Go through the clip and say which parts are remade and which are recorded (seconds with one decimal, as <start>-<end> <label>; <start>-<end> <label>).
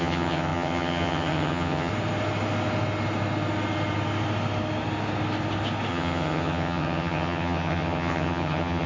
0.0-1.9 remade; 1.9-5.9 recorded; 5.9-8.9 remade